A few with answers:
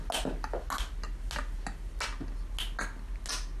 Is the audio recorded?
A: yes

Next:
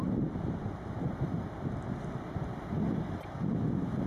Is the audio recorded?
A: yes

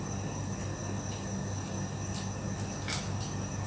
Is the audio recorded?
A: yes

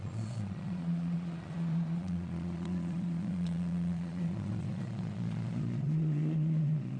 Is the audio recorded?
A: no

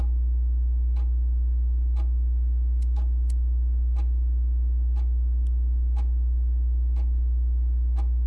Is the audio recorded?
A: yes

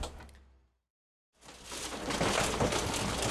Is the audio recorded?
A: yes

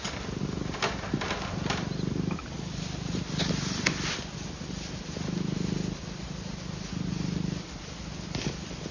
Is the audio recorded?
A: yes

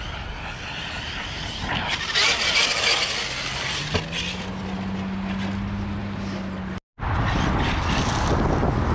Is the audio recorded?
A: yes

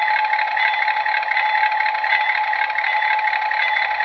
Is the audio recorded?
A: yes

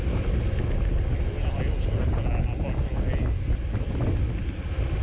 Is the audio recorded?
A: yes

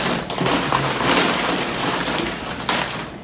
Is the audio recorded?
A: no